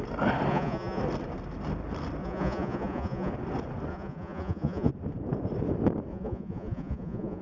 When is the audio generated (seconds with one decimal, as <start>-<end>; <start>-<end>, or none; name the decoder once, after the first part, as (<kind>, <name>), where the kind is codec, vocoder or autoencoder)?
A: 0.5-1.0 (vocoder, Vocos); 2.2-3.3; 3.9-4.9; 6.1-7.4

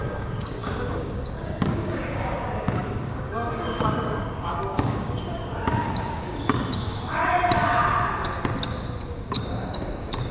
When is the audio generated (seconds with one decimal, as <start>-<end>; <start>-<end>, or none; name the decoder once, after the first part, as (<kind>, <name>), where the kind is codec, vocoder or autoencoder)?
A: 0.0-7.2 (codec, DAC); 9.2-10.3

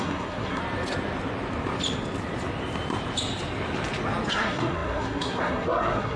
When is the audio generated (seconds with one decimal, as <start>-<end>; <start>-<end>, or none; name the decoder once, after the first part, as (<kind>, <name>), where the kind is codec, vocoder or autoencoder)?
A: 0.0-0.6 (codec, SNAC); 4.3-6.2

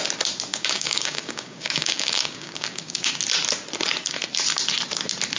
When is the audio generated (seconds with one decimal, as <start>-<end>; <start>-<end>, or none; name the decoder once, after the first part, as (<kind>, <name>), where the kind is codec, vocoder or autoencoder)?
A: 0.5-3.1 (codec, DAC)

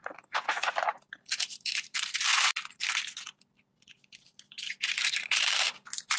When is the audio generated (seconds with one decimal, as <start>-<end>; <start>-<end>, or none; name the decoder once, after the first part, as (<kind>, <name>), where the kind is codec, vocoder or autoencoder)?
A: 0.0-0.9 (vocoder, BigVGAN v2); 1.5-2.3; 5.1-6.2